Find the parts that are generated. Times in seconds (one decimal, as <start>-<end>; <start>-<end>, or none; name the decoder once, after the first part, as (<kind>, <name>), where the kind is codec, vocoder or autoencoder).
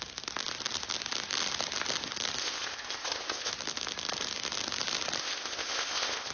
2.4-3.5 (codec, ZipCodec); 5.2-6.3